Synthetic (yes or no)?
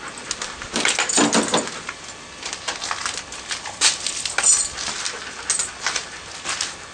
no